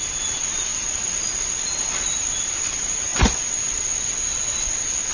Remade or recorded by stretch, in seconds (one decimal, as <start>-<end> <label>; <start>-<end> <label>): 0.0-5.1 recorded